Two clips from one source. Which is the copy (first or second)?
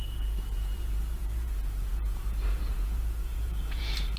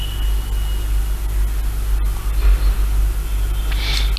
first